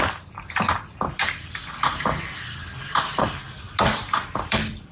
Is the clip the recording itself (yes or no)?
yes